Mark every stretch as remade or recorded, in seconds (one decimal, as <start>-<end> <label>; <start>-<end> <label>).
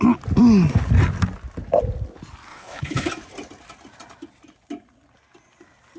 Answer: 0.0-2.5 recorded; 2.5-3.1 remade; 3.1-6.0 recorded